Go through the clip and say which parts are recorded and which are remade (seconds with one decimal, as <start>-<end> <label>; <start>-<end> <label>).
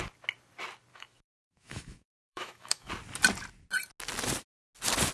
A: 0.0-0.9 recorded; 0.9-2.9 remade; 2.9-5.1 recorded